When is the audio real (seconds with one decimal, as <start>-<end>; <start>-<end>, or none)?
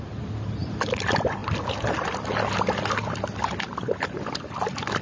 0.0-5.0